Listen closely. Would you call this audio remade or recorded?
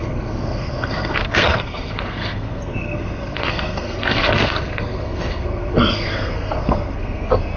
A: remade